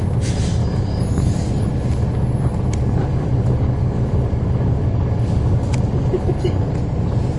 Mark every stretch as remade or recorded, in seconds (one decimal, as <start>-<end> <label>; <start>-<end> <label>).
0.0-0.6 recorded; 0.6-1.5 remade; 1.5-3.0 recorded; 3.0-6.7 remade; 6.7-7.4 recorded